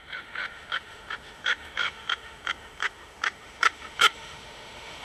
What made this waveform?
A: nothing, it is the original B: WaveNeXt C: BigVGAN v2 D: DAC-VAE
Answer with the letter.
D